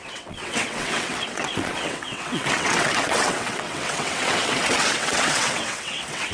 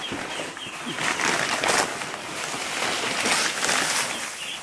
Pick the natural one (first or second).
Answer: second